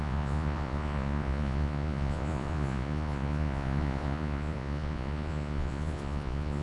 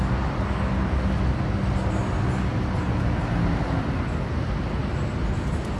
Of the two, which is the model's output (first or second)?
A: first